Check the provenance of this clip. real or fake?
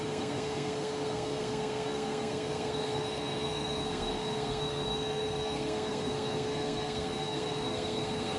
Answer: fake